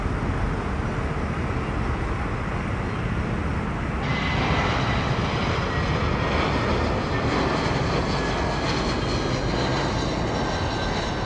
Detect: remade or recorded recorded